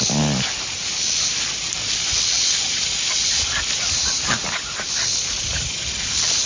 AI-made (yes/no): no